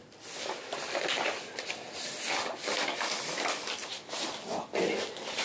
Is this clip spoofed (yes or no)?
no